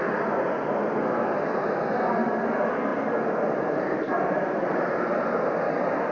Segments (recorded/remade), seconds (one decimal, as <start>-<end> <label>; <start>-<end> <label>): 0.0-6.1 recorded